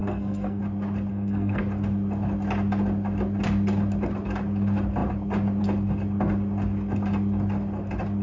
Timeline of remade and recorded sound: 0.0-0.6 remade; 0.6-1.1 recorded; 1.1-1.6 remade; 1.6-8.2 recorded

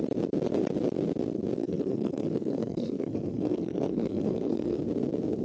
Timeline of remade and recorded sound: 0.0-1.6 recorded; 1.6-4.8 remade; 4.8-5.4 recorded